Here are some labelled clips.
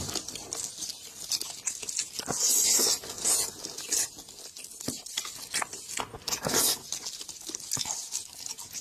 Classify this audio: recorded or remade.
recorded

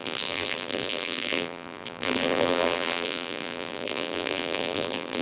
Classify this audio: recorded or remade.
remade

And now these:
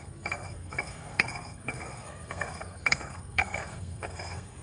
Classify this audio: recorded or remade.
remade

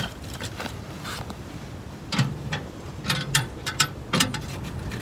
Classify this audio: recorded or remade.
remade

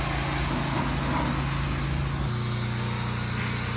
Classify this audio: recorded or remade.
recorded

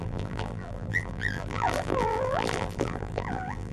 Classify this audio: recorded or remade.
remade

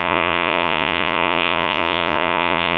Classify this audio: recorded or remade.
remade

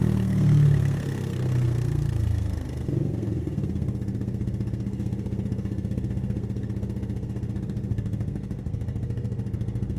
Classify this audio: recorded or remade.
remade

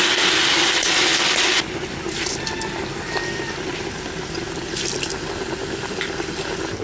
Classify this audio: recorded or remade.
recorded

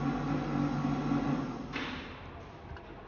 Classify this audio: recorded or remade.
recorded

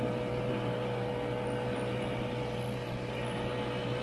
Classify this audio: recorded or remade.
recorded